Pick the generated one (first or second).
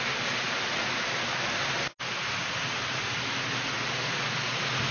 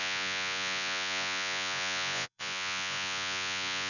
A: second